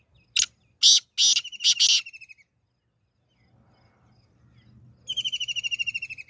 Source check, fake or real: real